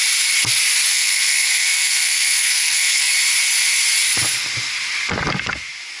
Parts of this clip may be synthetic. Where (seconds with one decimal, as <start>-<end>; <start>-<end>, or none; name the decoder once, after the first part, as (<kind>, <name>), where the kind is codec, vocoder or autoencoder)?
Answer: 0.9-3.1 (codec, SNAC)